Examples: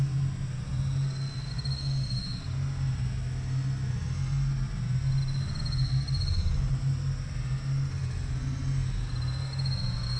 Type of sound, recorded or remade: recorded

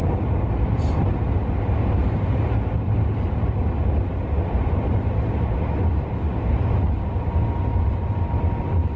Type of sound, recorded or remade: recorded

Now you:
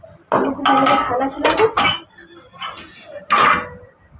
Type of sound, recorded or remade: recorded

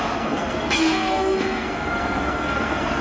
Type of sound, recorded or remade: remade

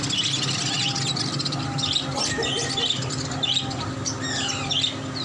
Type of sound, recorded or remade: recorded